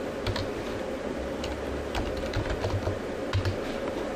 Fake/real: real